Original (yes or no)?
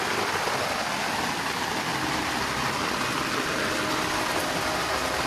yes